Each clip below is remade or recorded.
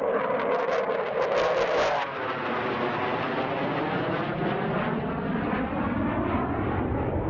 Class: recorded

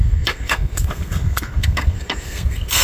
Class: remade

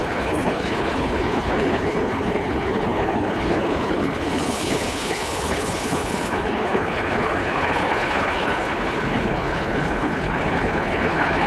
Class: remade